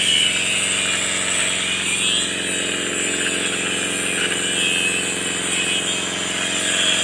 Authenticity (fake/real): real